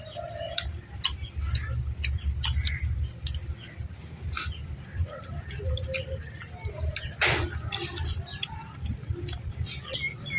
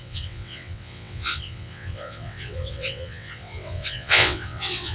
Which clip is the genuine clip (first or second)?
first